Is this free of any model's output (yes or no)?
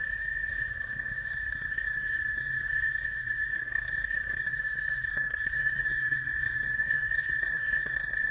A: no